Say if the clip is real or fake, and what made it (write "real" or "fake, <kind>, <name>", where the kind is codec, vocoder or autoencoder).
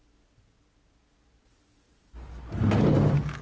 real